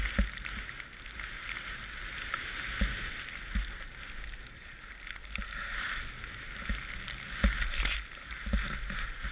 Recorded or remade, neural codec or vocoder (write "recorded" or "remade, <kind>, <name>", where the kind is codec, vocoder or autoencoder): recorded